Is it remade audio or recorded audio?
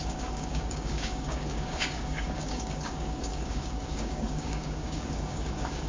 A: remade